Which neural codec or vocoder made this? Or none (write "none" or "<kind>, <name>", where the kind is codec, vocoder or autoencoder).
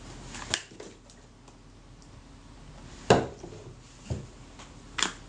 none